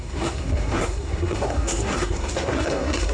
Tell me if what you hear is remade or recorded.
remade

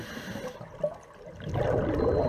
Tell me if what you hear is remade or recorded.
recorded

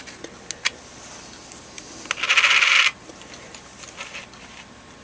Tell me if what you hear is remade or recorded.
recorded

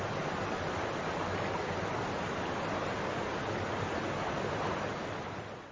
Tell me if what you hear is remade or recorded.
recorded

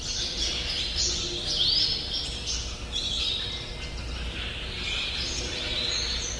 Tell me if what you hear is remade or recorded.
recorded